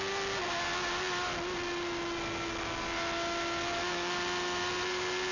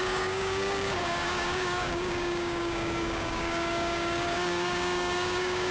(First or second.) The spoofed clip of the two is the second